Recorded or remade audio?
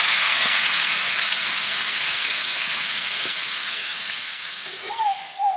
remade